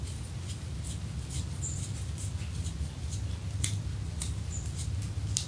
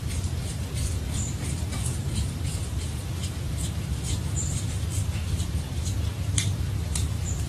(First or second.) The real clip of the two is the first